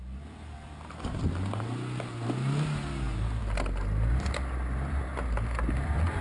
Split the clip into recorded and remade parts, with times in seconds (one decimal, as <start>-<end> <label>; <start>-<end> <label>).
0.0-6.2 recorded